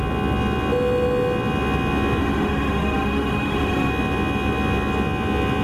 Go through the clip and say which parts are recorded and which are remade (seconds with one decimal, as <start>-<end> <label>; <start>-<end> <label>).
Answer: 0.0-2.2 recorded; 2.2-3.9 remade; 3.9-5.6 recorded